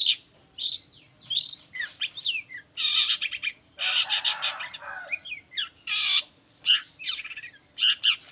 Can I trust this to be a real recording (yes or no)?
yes